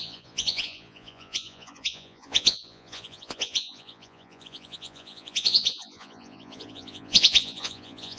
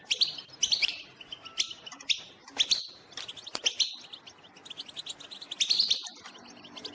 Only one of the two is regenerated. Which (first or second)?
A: first